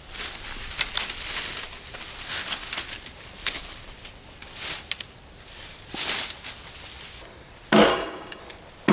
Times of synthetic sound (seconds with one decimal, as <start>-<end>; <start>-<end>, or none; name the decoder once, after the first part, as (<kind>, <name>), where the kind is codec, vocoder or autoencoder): 7.9-8.4 (codec, DAC)